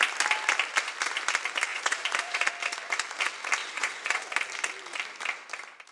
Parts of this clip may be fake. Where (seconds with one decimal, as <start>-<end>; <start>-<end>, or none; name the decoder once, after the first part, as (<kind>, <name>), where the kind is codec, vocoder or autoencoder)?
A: 1.7-2.5 (vocoder, Vocos); 3.6-4.2